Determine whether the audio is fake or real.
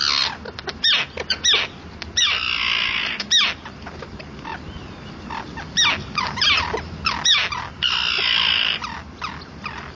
real